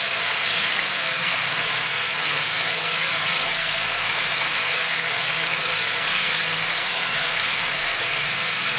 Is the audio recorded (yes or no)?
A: no